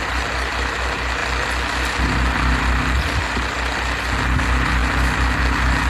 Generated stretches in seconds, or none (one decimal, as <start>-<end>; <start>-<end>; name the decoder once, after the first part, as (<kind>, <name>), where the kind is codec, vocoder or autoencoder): none